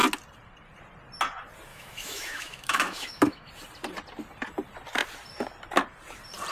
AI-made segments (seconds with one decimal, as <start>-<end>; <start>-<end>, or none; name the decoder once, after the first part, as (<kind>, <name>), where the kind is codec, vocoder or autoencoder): 1.7-3.5 (autoencoder, DAC-VAE)